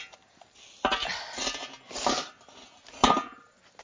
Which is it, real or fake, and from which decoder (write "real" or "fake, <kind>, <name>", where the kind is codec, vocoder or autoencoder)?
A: real